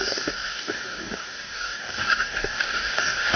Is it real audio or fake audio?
fake